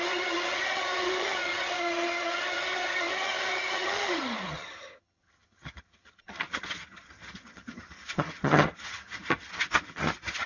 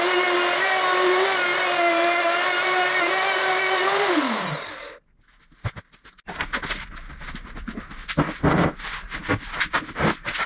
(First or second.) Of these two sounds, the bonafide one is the second